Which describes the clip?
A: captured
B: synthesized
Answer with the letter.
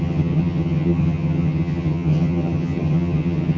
B